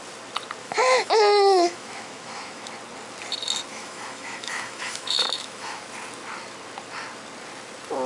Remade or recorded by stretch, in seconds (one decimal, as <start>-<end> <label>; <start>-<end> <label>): 0.0-0.6 recorded; 0.6-2.7 remade; 2.7-3.7 recorded; 3.7-5.8 remade; 5.8-8.1 recorded